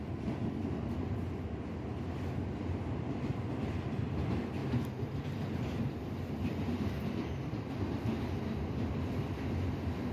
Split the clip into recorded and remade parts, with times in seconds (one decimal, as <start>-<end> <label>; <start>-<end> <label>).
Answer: 0.0-10.1 recorded